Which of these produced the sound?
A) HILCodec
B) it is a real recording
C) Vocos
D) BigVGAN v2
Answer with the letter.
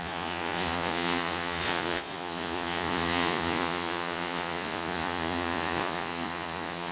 C